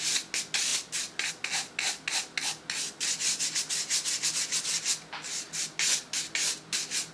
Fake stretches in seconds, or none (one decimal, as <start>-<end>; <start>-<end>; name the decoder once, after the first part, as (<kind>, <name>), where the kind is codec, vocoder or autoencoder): none